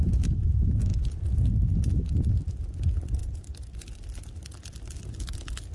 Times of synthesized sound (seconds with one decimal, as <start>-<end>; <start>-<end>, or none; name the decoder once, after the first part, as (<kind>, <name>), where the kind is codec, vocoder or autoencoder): 0.0-0.9 (vocoder, BigVGAN v2); 1.5-5.7